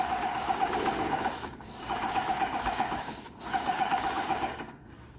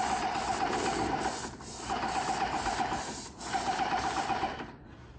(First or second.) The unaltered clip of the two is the second